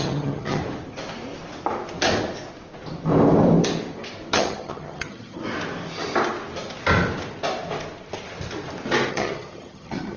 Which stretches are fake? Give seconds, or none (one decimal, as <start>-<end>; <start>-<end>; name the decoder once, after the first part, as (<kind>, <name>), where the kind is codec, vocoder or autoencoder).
0.0-0.6 (vocoder, HiFi-GAN); 4.3-5.4; 9.1-10.2